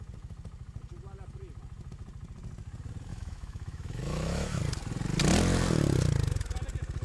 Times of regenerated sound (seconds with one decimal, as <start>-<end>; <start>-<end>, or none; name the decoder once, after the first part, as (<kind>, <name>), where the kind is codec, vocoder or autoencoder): 3.1-4.6 (autoencoder, DAC-VAE)